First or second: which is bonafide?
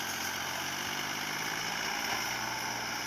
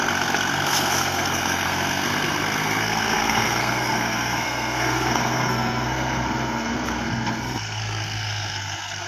first